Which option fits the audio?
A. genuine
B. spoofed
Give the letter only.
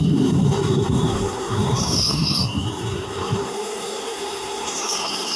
B